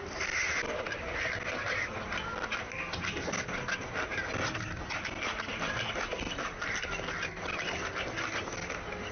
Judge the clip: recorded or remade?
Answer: recorded